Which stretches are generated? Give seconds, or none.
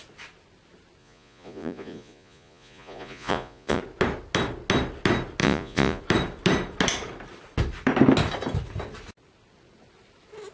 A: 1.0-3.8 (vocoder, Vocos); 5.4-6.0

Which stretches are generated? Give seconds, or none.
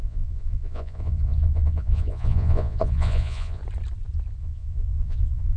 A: 0.0-3.6 (vocoder, Vocos); 4.4-5.6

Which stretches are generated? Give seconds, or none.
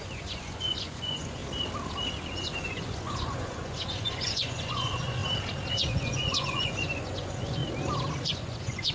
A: 0.0-1.4 (vocoder, Vocos); 2.2-5.2; 5.7-7.6; 8.2-8.9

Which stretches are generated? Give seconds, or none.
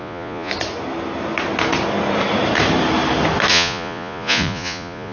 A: 0.0-0.5 (vocoder, Vocos); 3.5-5.1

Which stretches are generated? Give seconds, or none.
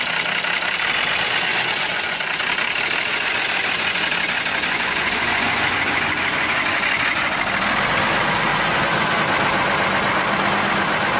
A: 1.5-2.5 (vocoder, Vocos); 3.1-7.4; 8.5-9.2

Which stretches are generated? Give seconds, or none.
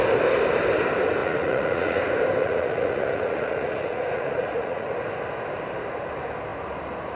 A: 1.2-2.0 (vocoder, Vocos); 2.4-4.9